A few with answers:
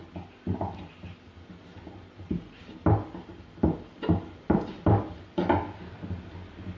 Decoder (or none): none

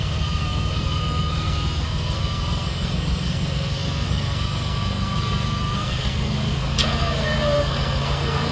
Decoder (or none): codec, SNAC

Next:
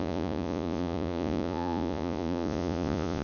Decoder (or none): vocoder, Vocos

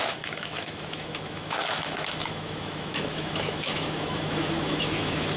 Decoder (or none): autoencoder, DAC-VAE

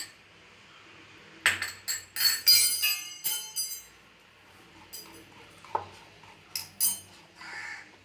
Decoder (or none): none